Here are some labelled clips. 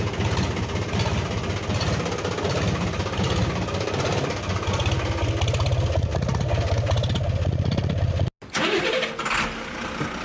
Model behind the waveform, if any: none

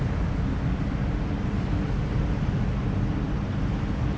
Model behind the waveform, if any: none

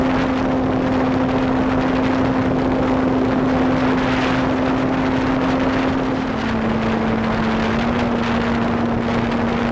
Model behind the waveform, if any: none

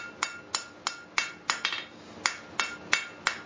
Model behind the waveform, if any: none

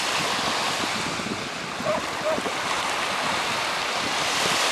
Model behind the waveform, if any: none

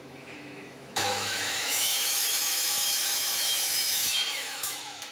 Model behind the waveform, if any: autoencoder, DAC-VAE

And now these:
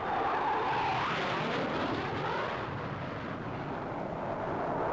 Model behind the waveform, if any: none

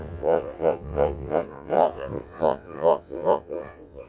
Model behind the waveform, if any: vocoder, WaveNeXt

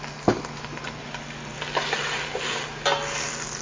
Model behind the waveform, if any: none